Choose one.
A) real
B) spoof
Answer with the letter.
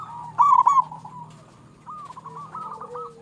A